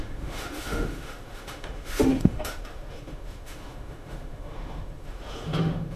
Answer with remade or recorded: remade